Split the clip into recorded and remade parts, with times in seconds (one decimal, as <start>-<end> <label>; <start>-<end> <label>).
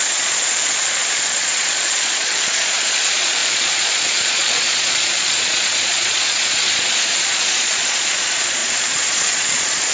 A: 0.0-9.9 remade